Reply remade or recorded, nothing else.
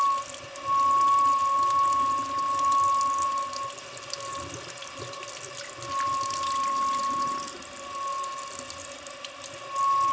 recorded